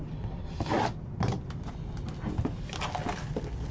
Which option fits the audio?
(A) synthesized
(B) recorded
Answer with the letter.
B